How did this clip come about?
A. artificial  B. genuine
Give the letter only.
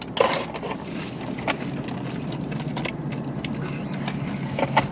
B